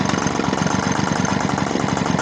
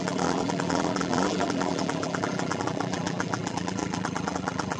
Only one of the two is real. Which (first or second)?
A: first